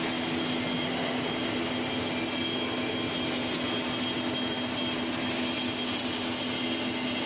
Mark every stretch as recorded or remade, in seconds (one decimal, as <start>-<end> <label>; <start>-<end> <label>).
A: 0.0-7.3 recorded